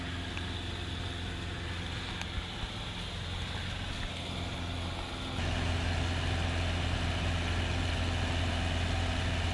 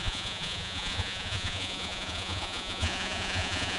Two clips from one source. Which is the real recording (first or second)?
first